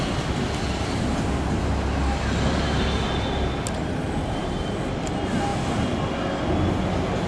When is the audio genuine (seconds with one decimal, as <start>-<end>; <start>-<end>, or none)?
0.0-7.3